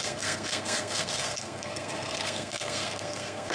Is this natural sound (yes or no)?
no